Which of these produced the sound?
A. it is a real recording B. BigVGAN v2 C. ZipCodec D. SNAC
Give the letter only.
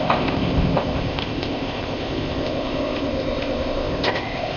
C